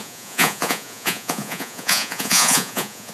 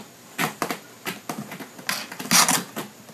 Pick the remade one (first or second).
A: first